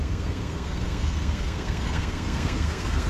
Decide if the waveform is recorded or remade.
remade